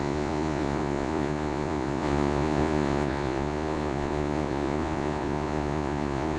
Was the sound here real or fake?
fake